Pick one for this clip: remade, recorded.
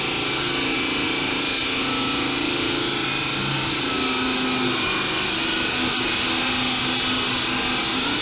recorded